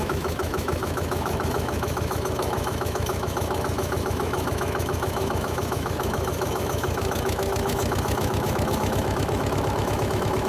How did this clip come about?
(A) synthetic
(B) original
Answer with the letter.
A